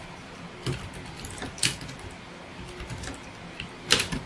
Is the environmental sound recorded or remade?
recorded